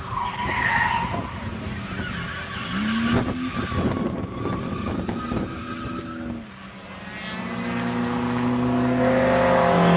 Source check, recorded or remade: recorded